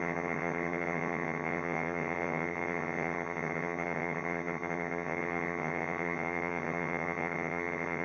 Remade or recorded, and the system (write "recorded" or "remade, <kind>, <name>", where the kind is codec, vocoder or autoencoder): remade, vocoder, HiFi-GAN